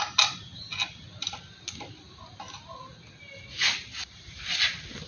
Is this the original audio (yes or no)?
yes